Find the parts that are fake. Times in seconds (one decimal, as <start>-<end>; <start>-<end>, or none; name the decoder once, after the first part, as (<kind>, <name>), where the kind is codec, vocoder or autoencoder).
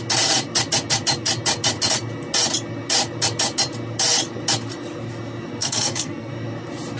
5.6-6.3 (codec, SNAC)